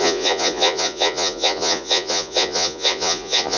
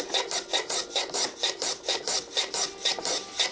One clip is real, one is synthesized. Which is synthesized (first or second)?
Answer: first